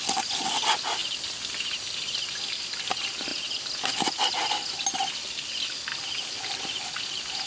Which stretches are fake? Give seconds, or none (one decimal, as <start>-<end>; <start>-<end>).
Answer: none